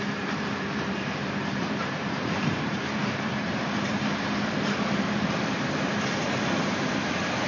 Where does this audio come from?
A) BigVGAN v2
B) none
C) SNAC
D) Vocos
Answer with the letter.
A